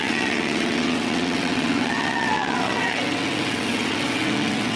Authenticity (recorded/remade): remade